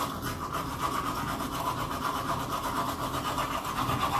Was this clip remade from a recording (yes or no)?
no